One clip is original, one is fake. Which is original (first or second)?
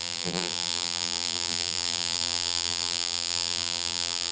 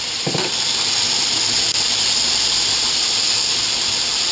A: second